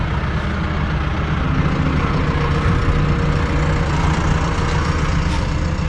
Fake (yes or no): no